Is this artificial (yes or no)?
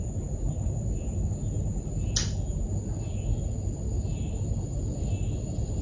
no